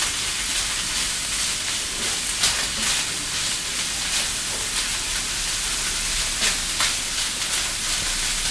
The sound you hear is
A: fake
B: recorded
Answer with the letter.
B